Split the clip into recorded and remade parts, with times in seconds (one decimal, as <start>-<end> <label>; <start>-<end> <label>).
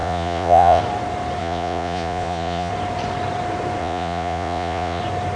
0.0-0.8 remade; 0.8-1.4 recorded; 1.4-2.7 remade; 2.7-3.8 recorded; 3.8-5.0 remade; 5.0-5.4 recorded